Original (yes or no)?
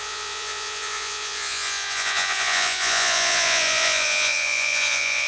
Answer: no